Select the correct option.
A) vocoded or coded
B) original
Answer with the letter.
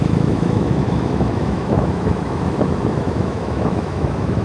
A